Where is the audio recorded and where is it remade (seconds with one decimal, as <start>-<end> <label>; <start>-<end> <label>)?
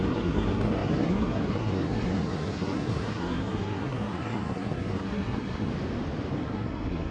0.0-5.7 remade; 5.7-6.3 recorded; 6.3-7.1 remade